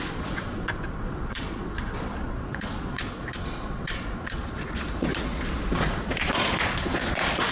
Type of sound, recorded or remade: remade